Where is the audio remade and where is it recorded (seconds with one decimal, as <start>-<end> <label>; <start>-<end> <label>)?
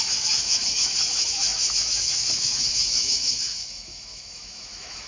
0.0-5.1 remade